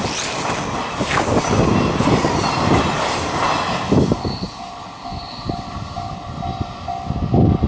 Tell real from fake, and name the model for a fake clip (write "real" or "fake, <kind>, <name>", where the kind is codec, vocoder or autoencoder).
real